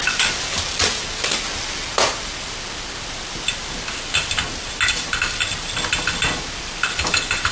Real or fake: real